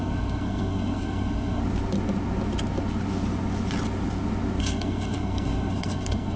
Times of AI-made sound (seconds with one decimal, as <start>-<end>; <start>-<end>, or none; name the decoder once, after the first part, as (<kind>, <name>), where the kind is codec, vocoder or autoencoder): 0.0-1.6 (codec, SNAC); 4.6-6.4